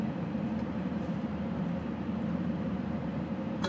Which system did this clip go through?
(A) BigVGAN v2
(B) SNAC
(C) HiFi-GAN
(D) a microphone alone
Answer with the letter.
A